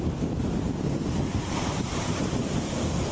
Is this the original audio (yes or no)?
no